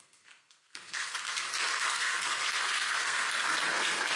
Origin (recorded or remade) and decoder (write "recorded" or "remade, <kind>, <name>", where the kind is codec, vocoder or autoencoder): remade, codec, SNAC